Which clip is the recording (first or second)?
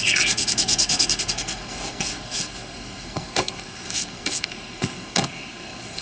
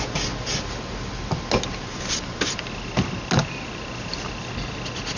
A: second